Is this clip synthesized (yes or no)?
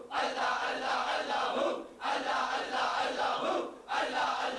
yes